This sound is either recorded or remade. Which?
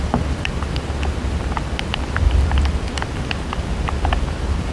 recorded